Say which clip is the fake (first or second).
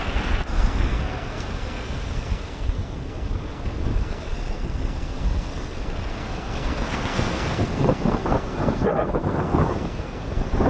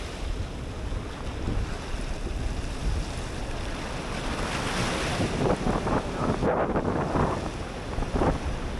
first